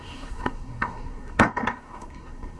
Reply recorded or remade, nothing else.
remade